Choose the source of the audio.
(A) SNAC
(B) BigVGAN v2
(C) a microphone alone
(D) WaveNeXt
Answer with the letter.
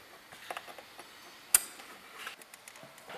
C